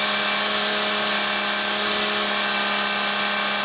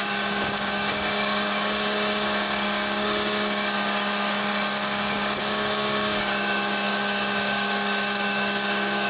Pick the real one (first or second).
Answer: first